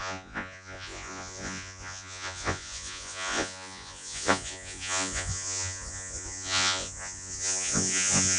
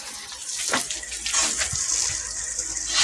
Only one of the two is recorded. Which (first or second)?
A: second